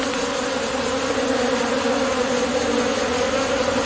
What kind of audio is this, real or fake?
real